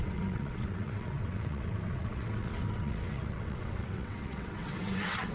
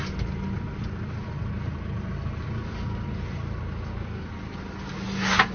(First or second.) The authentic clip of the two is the second